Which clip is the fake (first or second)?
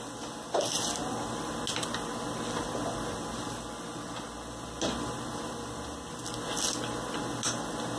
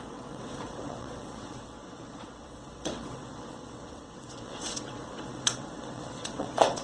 second